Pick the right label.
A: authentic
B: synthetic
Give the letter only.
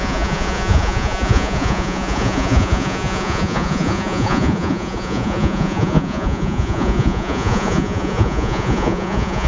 B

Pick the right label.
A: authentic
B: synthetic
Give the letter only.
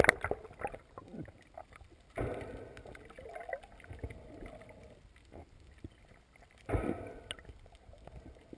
A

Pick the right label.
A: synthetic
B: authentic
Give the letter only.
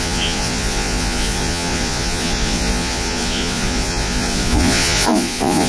A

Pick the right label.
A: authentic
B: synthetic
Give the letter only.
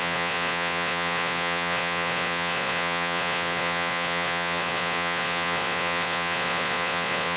B